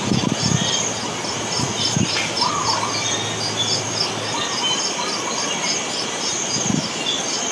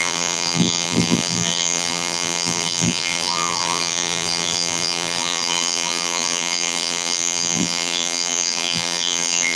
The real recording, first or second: first